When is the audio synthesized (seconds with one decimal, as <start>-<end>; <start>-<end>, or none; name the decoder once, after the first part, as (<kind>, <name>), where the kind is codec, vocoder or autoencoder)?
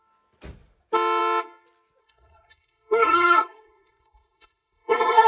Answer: 2.0-5.3 (codec, SNAC)